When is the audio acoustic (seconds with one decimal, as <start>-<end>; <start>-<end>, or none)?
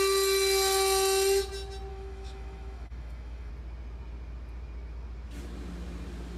0.0-1.9; 3.5-6.4